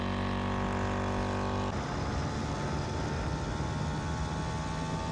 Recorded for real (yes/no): yes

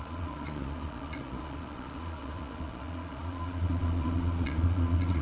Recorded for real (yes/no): no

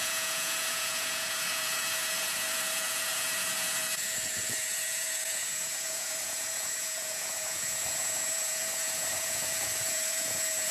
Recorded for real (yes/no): no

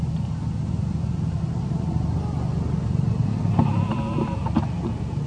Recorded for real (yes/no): yes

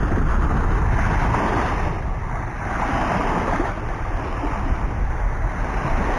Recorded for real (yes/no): yes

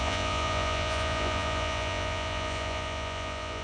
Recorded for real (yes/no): no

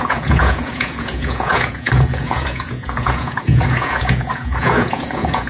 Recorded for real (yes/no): no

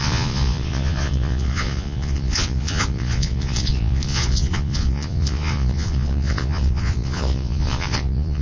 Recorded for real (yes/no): no